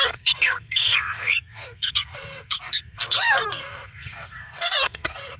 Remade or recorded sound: remade